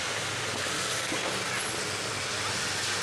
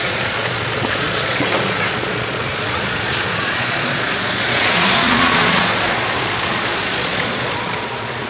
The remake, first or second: second